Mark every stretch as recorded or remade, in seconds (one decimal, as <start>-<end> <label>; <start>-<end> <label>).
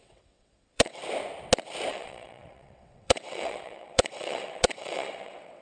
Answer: 0.0-1.0 remade; 1.0-1.9 recorded; 1.9-5.6 remade